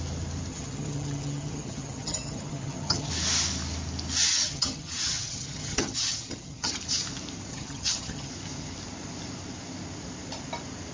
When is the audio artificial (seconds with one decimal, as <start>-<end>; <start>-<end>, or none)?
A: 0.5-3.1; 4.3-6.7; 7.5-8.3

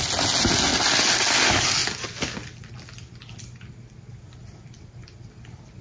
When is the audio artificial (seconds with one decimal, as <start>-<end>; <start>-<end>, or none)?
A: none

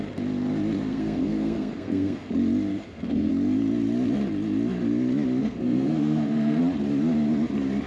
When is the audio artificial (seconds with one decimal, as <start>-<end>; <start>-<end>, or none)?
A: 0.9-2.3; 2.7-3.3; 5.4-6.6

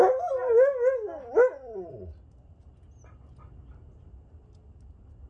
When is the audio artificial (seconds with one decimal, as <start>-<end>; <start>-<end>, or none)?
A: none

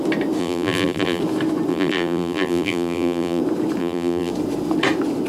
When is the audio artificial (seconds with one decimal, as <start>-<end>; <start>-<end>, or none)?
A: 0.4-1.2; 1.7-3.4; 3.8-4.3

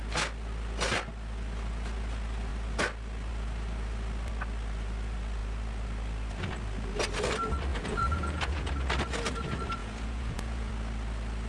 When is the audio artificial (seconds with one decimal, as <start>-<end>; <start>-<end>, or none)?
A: 7.7-8.7; 9.8-10.7

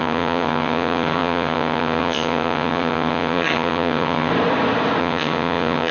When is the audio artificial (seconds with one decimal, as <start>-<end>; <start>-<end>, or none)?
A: 0.0-4.3; 5.0-5.9

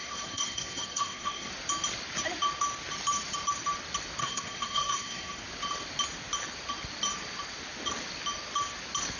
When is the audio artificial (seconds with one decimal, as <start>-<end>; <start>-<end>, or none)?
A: 0.0-1.5; 4.2-5.4